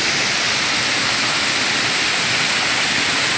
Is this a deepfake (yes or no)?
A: no